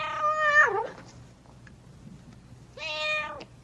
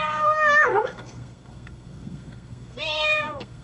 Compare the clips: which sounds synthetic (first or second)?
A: second